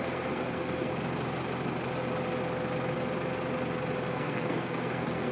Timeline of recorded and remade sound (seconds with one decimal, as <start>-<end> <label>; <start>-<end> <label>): 0.0-0.9 remade; 0.9-4.1 recorded; 4.1-5.3 remade